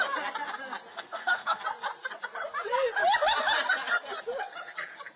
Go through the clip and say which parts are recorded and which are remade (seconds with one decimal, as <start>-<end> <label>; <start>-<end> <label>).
0.0-0.9 recorded; 0.9-1.6 remade; 1.6-5.2 recorded